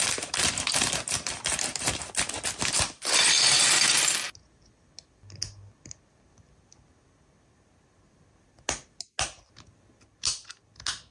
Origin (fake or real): real